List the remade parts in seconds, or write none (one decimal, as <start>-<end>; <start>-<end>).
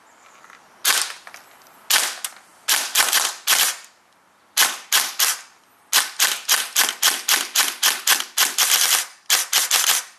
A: 2.5-5.4